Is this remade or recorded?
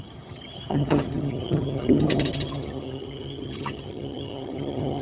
remade